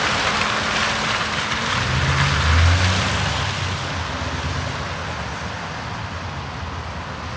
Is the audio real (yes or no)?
yes